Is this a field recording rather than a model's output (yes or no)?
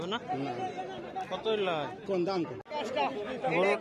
yes